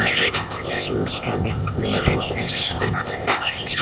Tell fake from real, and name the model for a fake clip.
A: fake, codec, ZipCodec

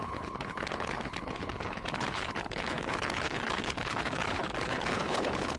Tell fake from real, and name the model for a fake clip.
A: fake, codec, HILCodec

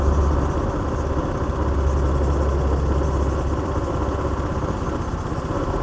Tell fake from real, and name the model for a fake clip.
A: real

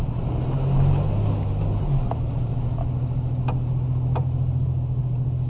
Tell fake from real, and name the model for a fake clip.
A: real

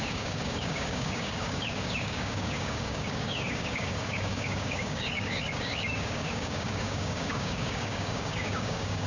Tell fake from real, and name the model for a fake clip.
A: fake, codec, DAC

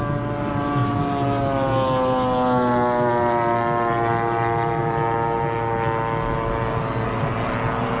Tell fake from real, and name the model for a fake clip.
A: real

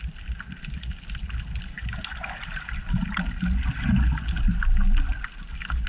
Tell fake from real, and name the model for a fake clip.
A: real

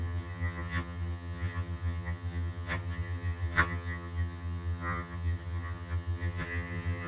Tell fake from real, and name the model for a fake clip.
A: fake, vocoder, HiFi-GAN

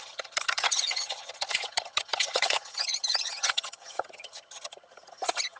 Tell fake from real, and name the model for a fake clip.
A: fake, vocoder, HiFi-GAN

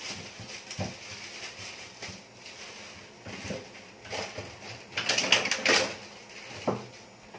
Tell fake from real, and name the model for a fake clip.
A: real